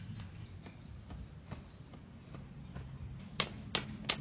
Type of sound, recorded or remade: recorded